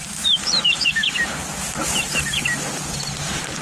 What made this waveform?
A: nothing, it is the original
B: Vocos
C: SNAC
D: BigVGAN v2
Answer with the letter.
D